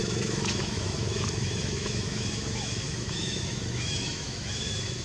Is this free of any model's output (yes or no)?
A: no